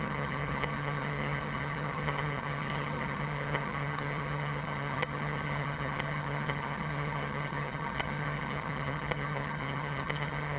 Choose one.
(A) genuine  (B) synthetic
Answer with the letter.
B